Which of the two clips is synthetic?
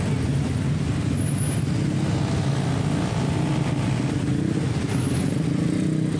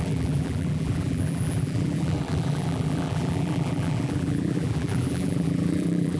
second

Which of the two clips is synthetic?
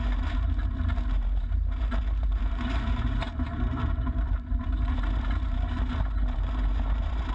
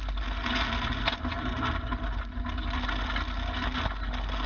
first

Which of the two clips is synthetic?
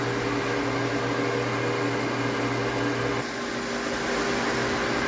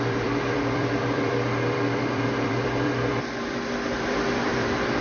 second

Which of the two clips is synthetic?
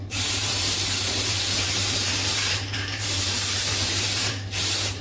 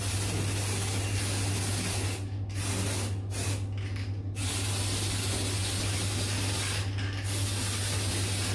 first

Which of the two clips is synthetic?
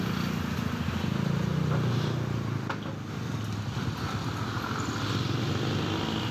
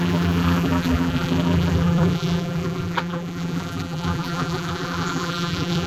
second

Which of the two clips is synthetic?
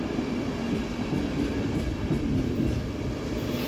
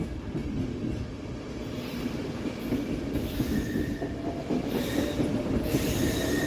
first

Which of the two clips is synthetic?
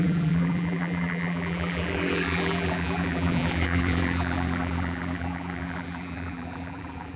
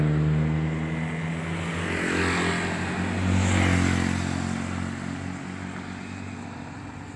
first